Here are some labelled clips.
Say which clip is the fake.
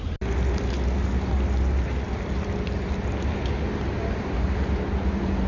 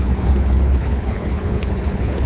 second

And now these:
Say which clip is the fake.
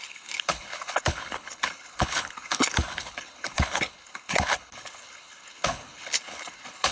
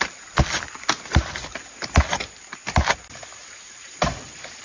first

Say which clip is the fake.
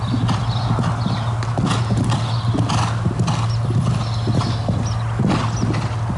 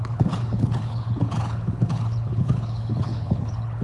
second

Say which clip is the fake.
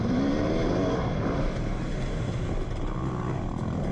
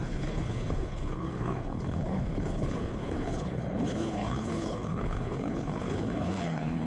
second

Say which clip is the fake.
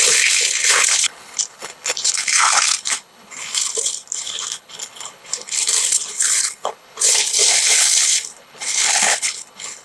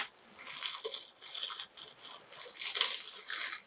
first